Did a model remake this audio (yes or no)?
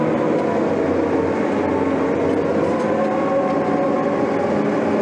no